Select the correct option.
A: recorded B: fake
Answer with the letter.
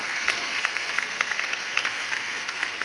B